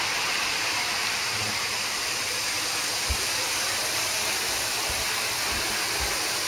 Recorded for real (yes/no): yes